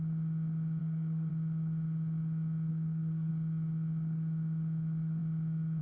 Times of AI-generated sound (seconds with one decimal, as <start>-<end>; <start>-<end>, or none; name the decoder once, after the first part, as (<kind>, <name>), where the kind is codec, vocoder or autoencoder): 0.8-1.3 (codec, SNAC); 2.7-3.3